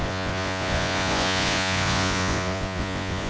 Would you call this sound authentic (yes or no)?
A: no